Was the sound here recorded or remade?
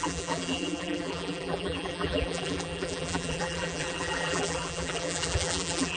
remade